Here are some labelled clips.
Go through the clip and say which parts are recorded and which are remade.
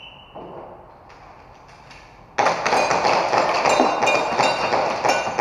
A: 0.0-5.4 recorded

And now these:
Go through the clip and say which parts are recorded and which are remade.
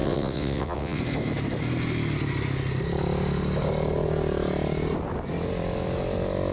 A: 0.0-1.0 remade; 1.0-6.5 recorded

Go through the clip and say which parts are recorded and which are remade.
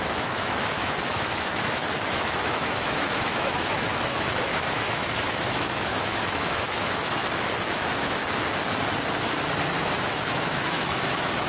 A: 0.0-7.2 remade; 7.2-7.7 recorded; 7.7-8.2 remade; 8.2-9.8 recorded; 9.8-11.5 remade